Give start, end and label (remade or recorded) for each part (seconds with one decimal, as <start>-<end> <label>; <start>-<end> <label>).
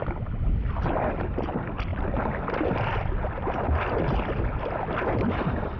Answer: 0.0-5.8 recorded